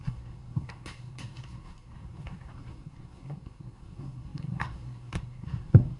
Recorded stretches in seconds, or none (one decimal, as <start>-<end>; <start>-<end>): none